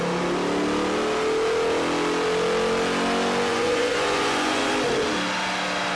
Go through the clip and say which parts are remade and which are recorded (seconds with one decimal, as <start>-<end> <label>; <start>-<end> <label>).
0.0-3.5 recorded; 3.5-4.7 remade; 4.7-6.0 recorded